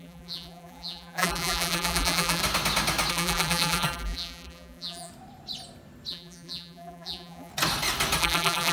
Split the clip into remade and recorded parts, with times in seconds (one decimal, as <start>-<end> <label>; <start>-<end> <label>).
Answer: 0.0-2.4 remade; 2.4-3.1 recorded; 3.1-5.1 remade; 5.1-6.1 recorded; 6.1-7.5 remade; 7.5-8.2 recorded; 8.2-8.7 remade